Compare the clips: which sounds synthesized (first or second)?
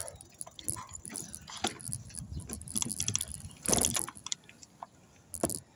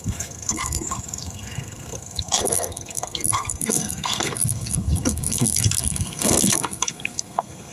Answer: second